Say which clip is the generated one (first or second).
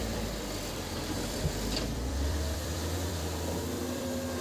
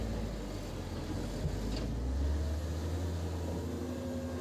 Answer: first